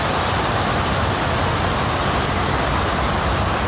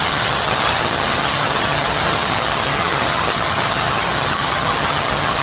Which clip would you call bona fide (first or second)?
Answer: first